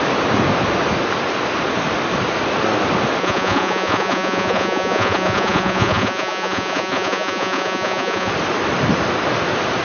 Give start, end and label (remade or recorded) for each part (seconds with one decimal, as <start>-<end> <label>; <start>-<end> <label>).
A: 0.0-3.2 recorded; 3.2-8.3 remade; 8.3-9.8 recorded